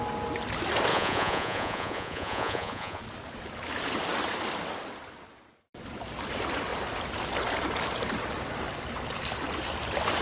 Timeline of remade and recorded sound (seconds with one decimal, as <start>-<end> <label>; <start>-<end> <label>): 0.0-0.9 recorded; 0.9-3.0 remade; 3.0-10.2 recorded